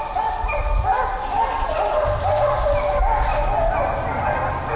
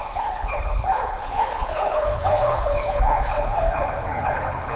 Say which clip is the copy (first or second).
second